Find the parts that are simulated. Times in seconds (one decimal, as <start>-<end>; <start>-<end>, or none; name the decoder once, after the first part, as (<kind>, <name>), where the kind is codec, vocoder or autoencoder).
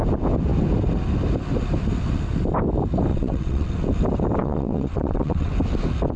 3.1-3.7 (vocoder, WaveNeXt); 4.4-5.5